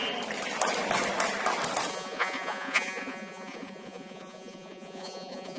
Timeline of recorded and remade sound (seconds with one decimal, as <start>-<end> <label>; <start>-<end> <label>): 0.0-1.9 recorded; 1.9-5.6 remade